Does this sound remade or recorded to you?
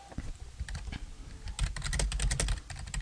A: recorded